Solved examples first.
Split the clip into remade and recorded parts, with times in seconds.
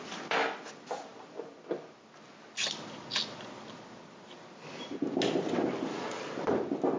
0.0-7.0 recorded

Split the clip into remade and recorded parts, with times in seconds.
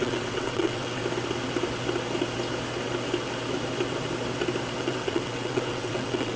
0.0-1.0 remade; 1.0-4.8 recorded; 4.8-6.4 remade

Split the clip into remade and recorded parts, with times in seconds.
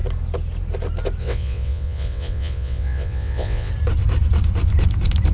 0.0-1.2 recorded; 1.2-3.7 remade; 3.7-5.3 recorded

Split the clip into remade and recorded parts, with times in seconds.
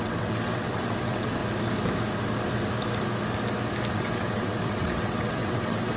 0.0-1.4 remade; 1.4-3.9 recorded; 3.9-6.0 remade